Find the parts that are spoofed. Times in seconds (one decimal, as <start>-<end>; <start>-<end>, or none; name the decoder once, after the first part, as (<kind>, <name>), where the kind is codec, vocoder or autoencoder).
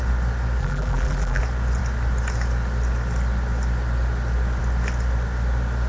0.6-1.4 (vocoder, BigVGAN v2)